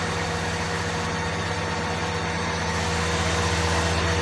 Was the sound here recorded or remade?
recorded